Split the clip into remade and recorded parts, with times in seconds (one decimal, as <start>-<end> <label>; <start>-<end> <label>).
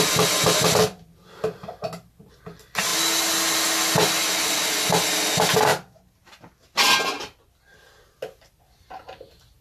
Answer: 0.0-9.6 recorded